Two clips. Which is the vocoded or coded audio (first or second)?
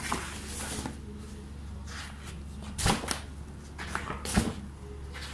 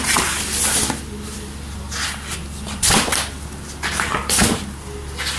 second